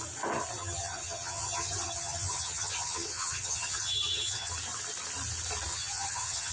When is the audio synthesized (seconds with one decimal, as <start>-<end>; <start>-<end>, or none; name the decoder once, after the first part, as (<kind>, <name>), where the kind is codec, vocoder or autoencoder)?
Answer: 0.6-4.5 (vocoder, HiFi-GAN); 5.7-6.5